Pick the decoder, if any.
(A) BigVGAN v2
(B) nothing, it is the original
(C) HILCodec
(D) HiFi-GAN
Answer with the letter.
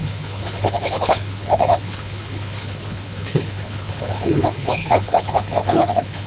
C